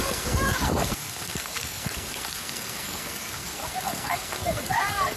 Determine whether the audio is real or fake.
fake